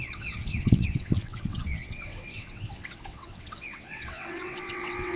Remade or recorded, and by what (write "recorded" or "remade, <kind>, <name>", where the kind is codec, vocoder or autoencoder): remade, vocoder, WaveNeXt